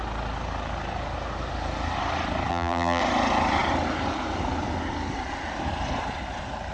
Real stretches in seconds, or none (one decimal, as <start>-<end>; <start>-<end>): 0.0-2.5; 3.0-6.7